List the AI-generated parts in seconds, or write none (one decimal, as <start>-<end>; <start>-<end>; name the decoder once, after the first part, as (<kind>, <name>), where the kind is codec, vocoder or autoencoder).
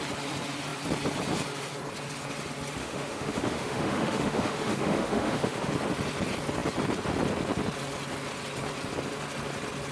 2.8-5.7 (autoencoder, DAC-VAE)